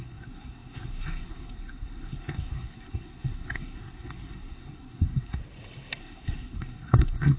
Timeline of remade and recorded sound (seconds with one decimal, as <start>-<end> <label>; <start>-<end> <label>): 0.0-5.4 remade; 5.4-6.0 recorded; 6.0-7.4 remade